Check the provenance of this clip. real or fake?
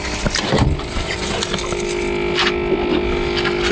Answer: real